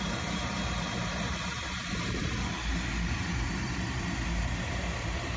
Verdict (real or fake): fake